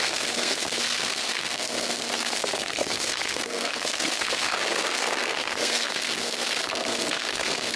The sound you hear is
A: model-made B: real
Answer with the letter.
A